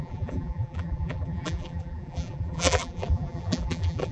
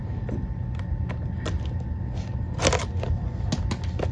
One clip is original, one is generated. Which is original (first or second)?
second